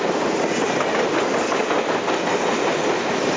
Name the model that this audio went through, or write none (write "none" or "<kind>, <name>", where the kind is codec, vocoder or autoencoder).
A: none